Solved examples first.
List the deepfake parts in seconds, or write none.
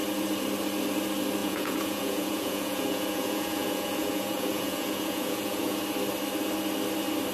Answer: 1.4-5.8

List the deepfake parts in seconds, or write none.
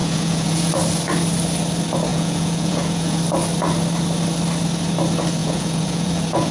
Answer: 0.0-0.7; 2.1-3.2; 5.4-6.5